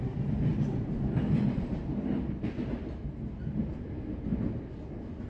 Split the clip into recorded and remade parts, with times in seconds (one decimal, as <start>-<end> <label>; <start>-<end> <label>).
0.0-0.5 remade; 0.5-3.7 recorded; 3.7-4.3 remade; 4.3-5.3 recorded